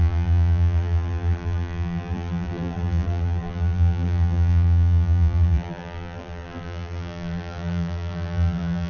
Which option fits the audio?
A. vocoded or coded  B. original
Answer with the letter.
A